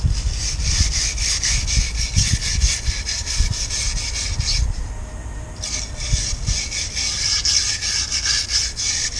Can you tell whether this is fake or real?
real